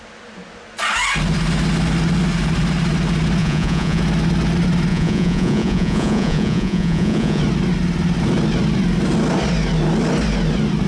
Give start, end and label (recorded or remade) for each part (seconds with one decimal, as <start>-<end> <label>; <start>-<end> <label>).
0.0-3.4 recorded; 3.4-4.0 remade; 4.0-4.9 recorded; 4.9-7.4 remade; 7.4-10.9 recorded